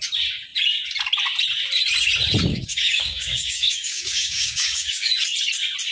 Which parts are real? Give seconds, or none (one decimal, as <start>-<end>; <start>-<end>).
0.0-2.5; 5.1-5.9